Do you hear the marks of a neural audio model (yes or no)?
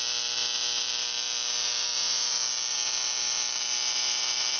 yes